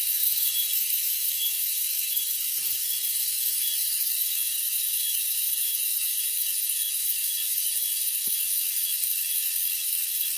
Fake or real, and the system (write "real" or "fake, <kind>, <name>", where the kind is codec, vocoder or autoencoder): fake, autoencoder, DAC-VAE